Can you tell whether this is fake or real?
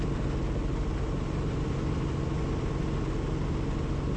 real